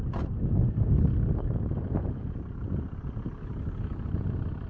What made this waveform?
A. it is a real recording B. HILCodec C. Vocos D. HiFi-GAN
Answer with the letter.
A